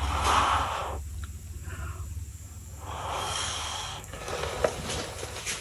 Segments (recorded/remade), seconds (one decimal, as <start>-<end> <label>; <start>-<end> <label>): 0.0-2.3 recorded; 2.3-4.3 remade; 4.3-5.6 recorded

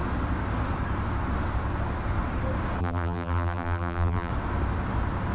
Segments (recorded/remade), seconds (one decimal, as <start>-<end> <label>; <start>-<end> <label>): 0.0-2.8 recorded; 2.8-4.3 remade; 4.3-5.3 recorded

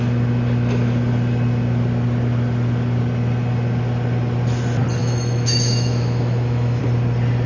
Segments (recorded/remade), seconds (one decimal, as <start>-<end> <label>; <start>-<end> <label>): 0.0-5.0 recorded; 5.0-6.8 remade; 6.8-7.5 recorded

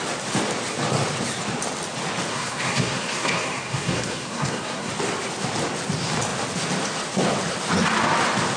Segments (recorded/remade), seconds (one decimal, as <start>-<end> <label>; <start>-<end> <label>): 0.0-2.3 recorded; 2.3-4.9 remade; 4.9-8.6 recorded

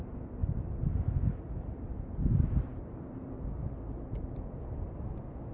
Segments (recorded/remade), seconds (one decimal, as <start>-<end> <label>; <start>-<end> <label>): 0.0-0.4 recorded; 0.4-1.4 remade; 1.4-2.7 recorded; 2.7-3.4 remade; 3.4-5.5 recorded

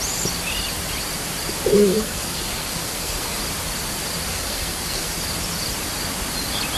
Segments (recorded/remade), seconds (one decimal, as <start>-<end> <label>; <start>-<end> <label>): 0.0-1.7 recorded; 1.7-3.4 remade; 3.4-4.3 recorded; 4.3-5.1 remade; 5.1-6.8 recorded

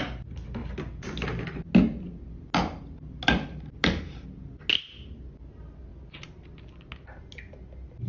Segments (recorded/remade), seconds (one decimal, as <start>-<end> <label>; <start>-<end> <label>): 0.0-8.1 recorded